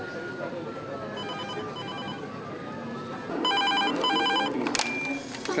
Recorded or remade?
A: recorded